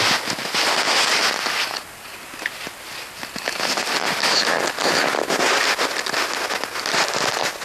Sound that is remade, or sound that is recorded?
recorded